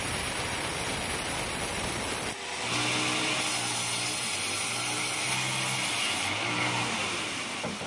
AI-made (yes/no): no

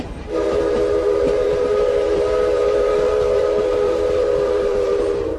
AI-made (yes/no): yes